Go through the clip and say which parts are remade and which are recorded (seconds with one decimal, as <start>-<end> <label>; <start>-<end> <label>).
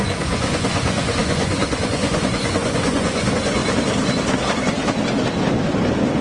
0.0-3.6 remade; 3.6-6.2 recorded